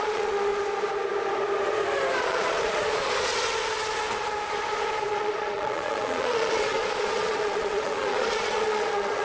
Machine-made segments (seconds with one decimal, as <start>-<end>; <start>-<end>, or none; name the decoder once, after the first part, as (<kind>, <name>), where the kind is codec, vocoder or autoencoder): 0.0-0.5 (vocoder, Vocos); 2.2-3.3; 4.9-9.2